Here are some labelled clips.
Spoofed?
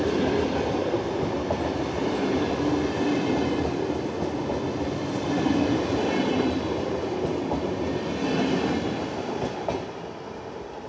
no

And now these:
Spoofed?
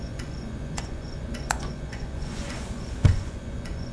yes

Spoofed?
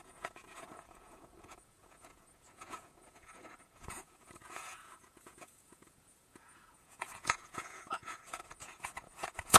yes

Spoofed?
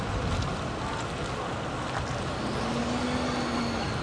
no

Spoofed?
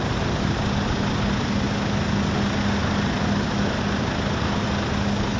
no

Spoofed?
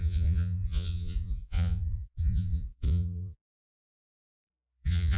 yes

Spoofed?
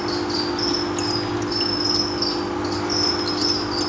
no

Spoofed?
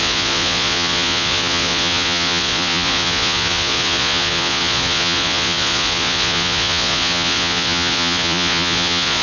yes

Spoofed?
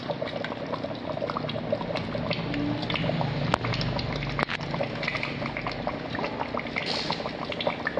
no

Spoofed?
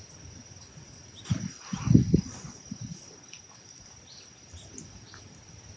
no